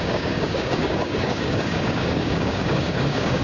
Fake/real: fake